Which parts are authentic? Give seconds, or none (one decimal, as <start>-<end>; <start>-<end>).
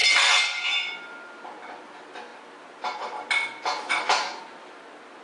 0.0-5.2